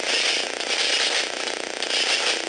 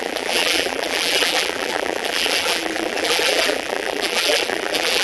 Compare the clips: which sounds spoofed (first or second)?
second